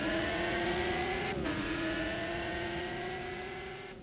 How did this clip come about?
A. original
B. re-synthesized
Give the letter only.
B